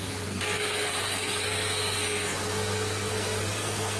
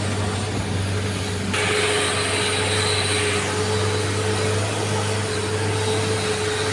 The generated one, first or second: first